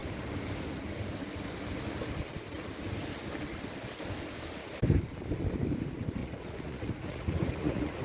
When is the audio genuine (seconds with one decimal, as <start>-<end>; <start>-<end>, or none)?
0.0-6.2